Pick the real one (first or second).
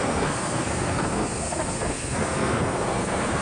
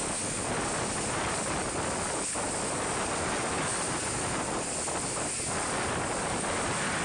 second